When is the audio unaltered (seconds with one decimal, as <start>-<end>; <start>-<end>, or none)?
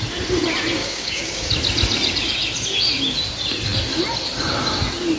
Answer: 0.0-0.8; 1.5-5.2